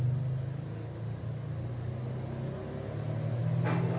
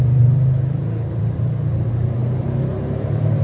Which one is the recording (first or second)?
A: first